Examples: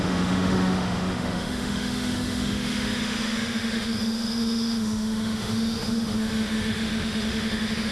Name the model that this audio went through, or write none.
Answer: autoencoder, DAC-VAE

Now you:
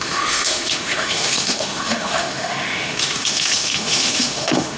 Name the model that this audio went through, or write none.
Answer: autoencoder, DAC-VAE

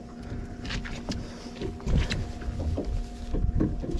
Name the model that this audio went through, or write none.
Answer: none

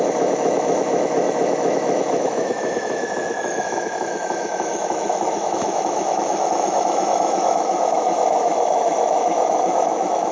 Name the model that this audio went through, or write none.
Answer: autoencoder, DAC-VAE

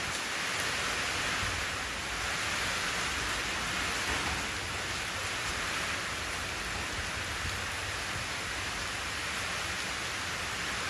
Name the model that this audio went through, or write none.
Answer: none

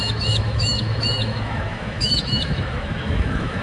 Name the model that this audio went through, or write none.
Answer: autoencoder, DAC-VAE